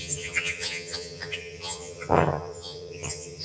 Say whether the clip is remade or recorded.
remade